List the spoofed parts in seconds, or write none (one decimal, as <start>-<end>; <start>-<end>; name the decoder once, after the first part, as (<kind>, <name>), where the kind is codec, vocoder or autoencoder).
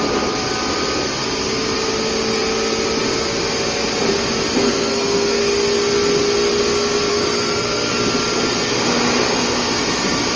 4.6-5.4 (codec, SNAC); 7.1-7.9